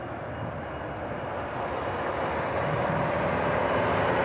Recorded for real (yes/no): yes